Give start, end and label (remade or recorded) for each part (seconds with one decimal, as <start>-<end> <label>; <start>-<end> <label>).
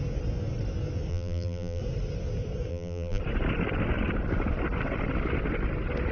0.0-1.1 recorded; 1.1-1.8 remade; 1.8-2.7 recorded; 2.7-3.2 remade; 3.2-6.1 recorded